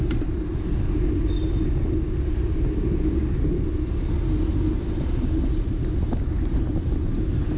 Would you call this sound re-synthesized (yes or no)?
no